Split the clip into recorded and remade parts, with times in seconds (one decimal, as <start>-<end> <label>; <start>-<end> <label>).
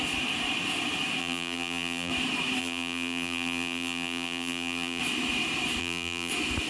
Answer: 0.0-1.2 recorded; 1.2-2.1 remade; 2.1-2.6 recorded; 2.6-5.0 remade; 5.0-5.8 recorded; 5.8-6.3 remade; 6.3-6.7 recorded